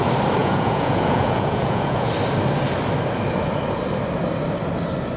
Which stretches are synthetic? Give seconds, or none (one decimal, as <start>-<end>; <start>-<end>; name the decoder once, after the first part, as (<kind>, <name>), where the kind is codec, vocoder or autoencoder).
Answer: 0.4-2.1 (vocoder, Vocos)